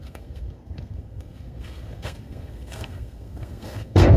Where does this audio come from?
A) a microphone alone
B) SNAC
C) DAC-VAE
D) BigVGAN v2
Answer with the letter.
B